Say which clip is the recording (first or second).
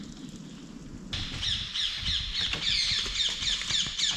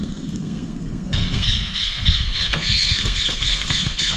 first